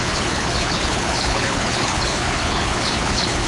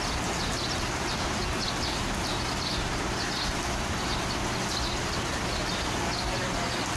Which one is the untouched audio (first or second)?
second